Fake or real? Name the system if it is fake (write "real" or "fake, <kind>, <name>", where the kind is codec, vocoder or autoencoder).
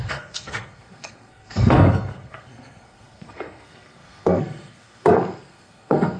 fake, codec, SNAC